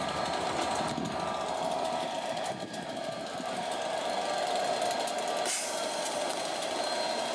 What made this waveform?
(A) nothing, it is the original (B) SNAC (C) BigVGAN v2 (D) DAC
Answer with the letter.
A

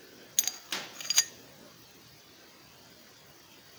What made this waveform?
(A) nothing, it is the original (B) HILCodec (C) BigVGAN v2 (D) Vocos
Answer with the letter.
A